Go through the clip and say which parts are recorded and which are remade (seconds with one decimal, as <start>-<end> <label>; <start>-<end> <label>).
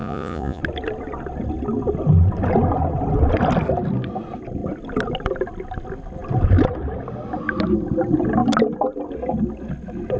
0.0-0.6 remade; 0.6-10.2 recorded